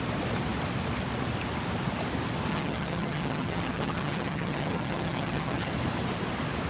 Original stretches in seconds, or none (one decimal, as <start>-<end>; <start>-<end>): 0.0-2.5; 5.7-6.7